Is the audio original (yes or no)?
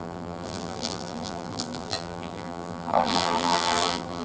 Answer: no